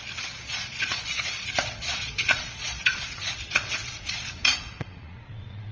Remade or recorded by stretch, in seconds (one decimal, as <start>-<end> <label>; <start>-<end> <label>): 0.0-5.7 remade